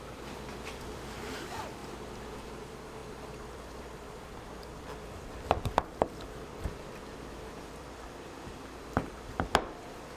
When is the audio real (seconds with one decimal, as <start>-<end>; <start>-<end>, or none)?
none